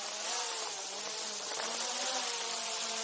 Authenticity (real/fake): fake